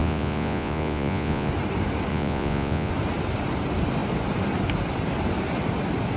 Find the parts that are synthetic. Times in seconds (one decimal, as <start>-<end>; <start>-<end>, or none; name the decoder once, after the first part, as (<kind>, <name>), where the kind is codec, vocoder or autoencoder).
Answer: 0.0-1.5 (vocoder, Vocos); 2.1-2.9